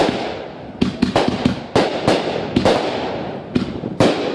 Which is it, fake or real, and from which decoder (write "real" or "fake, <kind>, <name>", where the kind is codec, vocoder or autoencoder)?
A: real